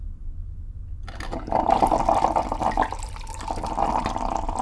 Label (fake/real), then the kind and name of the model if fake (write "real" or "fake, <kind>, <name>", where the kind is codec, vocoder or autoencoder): real